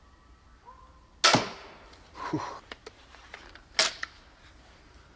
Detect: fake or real real